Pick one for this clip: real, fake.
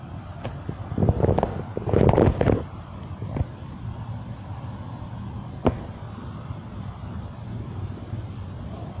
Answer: real